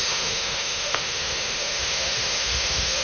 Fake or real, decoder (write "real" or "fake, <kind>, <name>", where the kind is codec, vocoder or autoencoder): fake, autoencoder, DAC-VAE